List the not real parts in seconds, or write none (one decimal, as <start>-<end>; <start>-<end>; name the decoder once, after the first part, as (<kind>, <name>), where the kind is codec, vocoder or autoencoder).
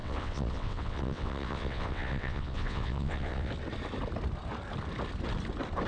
0.0-3.5 (vocoder, WaveNeXt)